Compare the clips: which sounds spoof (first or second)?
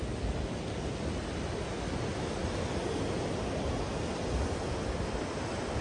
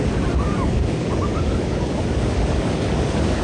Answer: second